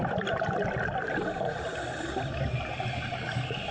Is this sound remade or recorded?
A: recorded